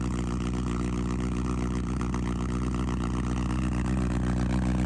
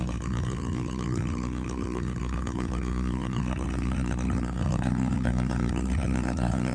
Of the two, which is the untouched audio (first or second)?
first